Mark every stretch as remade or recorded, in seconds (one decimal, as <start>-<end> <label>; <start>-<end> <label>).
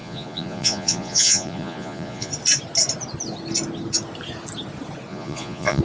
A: 0.0-2.3 remade; 2.3-5.1 recorded; 5.1-5.8 remade